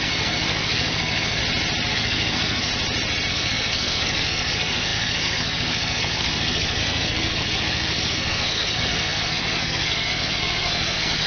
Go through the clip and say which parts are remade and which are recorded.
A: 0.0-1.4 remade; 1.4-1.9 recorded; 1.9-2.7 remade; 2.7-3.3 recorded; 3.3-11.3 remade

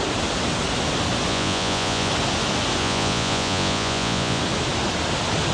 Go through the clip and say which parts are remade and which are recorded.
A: 0.0-1.3 recorded; 1.3-2.1 remade; 2.1-2.8 recorded; 2.8-4.4 remade; 4.4-5.5 recorded

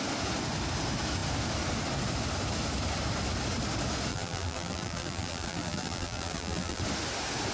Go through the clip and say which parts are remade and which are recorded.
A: 0.0-4.1 recorded; 4.1-6.8 remade; 6.8-7.5 recorded